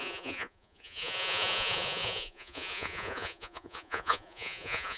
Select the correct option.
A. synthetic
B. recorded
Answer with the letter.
A